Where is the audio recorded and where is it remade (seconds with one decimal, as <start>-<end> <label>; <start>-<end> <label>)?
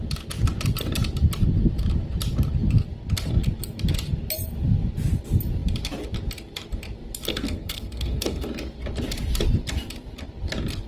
0.0-7.3 recorded; 7.3-8.5 remade; 8.5-10.9 recorded